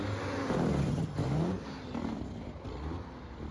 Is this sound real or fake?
real